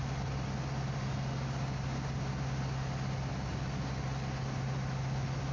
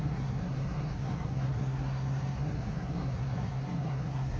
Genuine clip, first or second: first